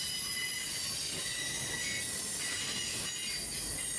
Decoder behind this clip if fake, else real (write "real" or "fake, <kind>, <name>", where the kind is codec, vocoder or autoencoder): real